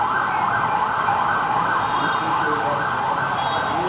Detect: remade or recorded recorded